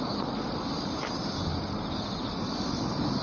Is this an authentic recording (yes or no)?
yes